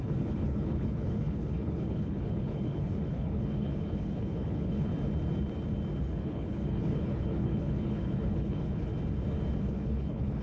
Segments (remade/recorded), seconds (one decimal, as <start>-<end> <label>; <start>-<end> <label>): 0.0-4.9 remade; 4.9-6.0 recorded; 6.0-8.9 remade; 8.9-9.6 recorded; 9.6-10.4 remade